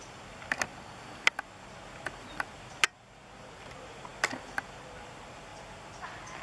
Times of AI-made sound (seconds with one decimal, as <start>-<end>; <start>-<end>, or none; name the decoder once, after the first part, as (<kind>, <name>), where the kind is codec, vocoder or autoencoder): none